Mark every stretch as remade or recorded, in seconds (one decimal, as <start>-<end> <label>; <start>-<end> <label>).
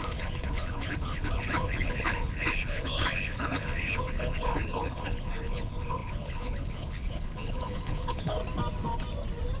0.0-8.4 remade; 8.4-9.6 recorded